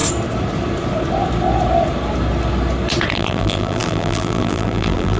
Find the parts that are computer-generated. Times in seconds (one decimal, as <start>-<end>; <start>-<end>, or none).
3.1-5.2